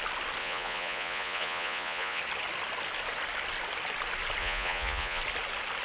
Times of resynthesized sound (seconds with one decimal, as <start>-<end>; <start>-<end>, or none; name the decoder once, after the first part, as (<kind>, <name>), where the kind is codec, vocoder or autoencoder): 0.4-2.2 (vocoder, Vocos); 4.4-5.2